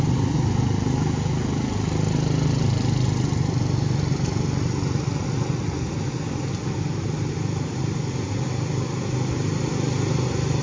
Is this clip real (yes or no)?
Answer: yes